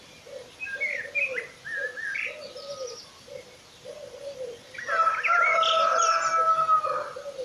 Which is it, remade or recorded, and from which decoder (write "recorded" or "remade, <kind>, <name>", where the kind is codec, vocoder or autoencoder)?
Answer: remade, vocoder, BigVGAN v2